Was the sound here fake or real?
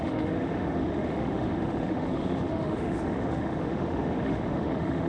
fake